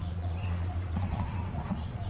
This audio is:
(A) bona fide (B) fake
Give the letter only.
B